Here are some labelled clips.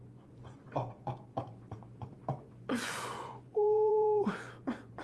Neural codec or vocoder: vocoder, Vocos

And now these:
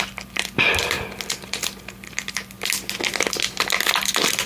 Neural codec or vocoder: none